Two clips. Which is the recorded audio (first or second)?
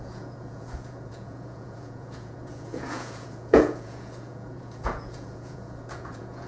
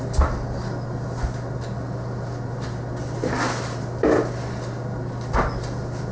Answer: second